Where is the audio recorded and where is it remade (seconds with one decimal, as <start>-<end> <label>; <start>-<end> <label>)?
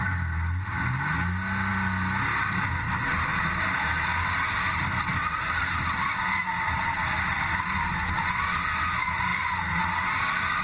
0.0-10.6 recorded